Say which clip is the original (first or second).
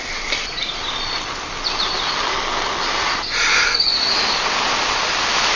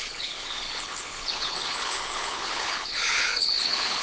first